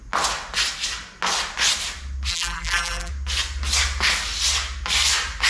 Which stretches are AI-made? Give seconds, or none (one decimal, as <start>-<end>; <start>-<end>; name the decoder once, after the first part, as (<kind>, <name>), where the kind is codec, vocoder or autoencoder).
2.3-3.1 (vocoder, BigVGAN v2)